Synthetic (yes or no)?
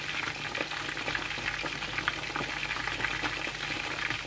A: no